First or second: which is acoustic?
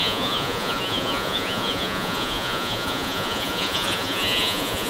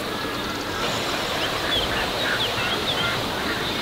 second